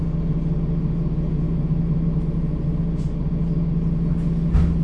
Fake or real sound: real